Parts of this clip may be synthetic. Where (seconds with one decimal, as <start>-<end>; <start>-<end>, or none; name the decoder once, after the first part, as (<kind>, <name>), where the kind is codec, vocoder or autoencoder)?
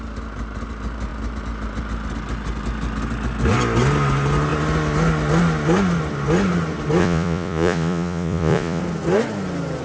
7.0-8.8 (vocoder, Vocos)